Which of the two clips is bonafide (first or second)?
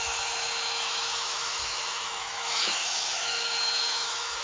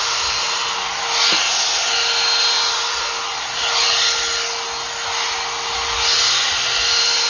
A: second